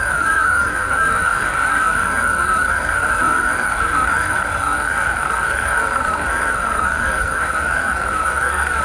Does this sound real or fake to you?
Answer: fake